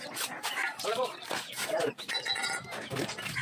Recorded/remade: remade